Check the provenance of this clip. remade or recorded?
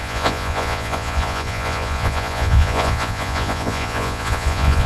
remade